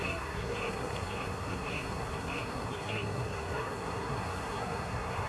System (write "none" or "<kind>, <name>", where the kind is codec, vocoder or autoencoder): codec, SNAC